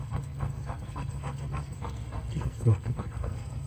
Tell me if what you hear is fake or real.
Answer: fake